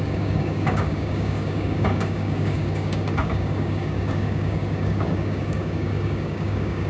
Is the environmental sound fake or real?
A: fake